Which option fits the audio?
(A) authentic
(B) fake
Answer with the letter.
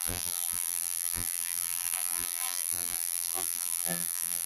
B